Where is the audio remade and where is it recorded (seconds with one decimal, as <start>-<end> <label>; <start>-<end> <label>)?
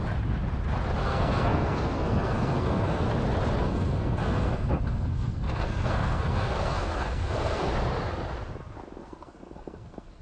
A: 0.0-1.0 recorded; 1.0-3.1 remade; 3.1-3.6 recorded; 3.6-7.7 remade; 7.7-9.0 recorded; 9.0-10.2 remade